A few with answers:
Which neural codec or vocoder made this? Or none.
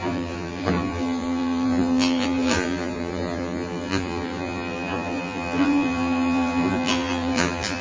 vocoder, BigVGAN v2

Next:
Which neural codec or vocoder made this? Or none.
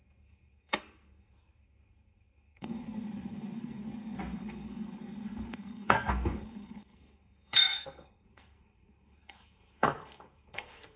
codec, SNAC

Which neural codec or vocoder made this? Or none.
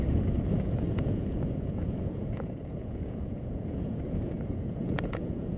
vocoder, Vocos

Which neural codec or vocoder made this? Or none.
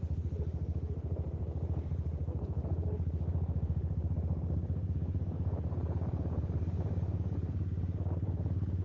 vocoder, BigVGAN v2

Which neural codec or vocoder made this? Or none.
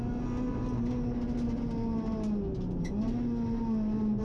none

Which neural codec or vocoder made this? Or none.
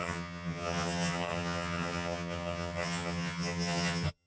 vocoder, HiFi-GAN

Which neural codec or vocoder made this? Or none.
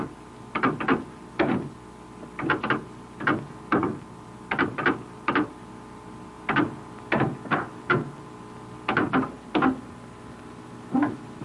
none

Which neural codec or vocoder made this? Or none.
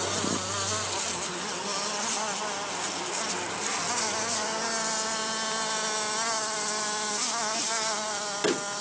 none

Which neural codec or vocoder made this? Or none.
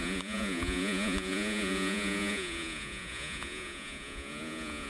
vocoder, Vocos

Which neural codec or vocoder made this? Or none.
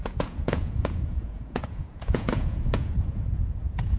vocoder, Vocos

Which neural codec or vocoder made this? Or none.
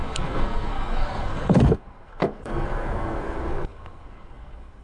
codec, SNAC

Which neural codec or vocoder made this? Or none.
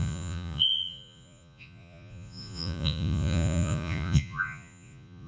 vocoder, Vocos